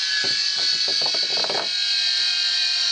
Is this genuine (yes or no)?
no